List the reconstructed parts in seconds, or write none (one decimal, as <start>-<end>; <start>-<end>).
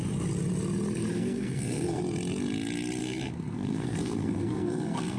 1.1-2.0; 3.0-5.2